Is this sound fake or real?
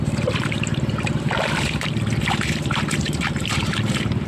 fake